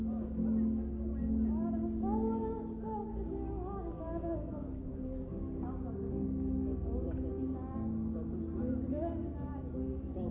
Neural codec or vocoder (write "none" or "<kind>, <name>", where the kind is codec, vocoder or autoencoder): none